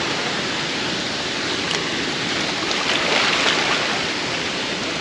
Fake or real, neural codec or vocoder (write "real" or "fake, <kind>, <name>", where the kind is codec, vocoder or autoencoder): real